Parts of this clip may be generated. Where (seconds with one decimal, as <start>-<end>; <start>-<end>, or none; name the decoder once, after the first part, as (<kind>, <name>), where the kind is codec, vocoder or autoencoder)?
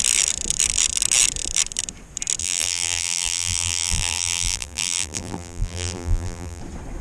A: 2.4-6.6 (vocoder, BigVGAN v2)